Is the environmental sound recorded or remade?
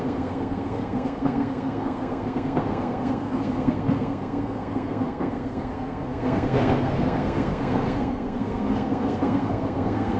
remade